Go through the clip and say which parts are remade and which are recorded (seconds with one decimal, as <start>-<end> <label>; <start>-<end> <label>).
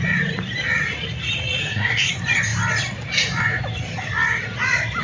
0.0-1.6 recorded; 1.6-2.1 remade; 2.1-5.0 recorded